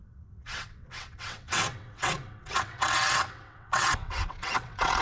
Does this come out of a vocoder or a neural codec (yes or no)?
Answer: yes